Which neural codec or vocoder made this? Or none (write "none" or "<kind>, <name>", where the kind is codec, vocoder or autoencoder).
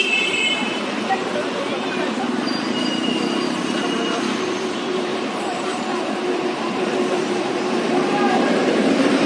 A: vocoder, BigVGAN v2